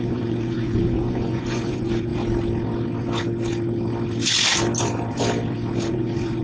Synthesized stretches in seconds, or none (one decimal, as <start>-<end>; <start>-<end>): 0.0-2.1; 5.9-6.4